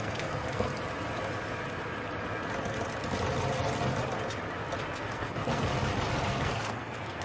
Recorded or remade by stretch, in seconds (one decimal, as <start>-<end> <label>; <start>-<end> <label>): 0.0-0.7 remade; 0.7-5.0 recorded; 5.0-5.7 remade; 5.7-6.3 recorded; 6.3-7.2 remade